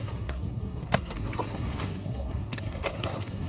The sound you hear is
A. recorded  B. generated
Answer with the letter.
B